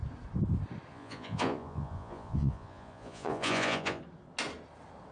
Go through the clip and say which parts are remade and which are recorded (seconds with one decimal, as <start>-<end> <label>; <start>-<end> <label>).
0.0-0.9 recorded; 0.9-4.0 remade; 4.0-5.1 recorded